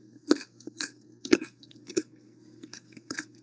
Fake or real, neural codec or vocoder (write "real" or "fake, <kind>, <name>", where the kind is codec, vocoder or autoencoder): fake, codec, SNAC